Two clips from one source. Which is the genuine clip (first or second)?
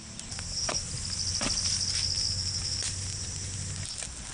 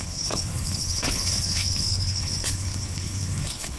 first